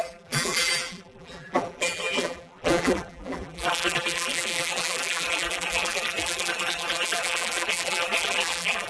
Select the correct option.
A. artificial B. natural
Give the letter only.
A